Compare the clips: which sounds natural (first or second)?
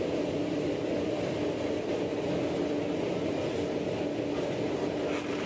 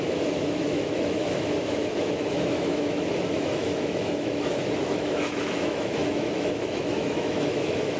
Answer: first